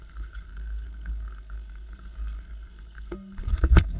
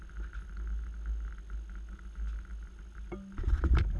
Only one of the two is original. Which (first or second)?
second